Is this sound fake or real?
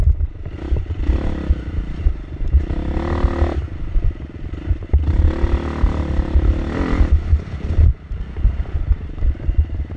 real